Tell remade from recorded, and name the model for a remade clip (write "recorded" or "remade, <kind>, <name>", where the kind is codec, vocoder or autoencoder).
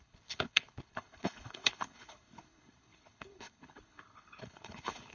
remade, codec, HILCodec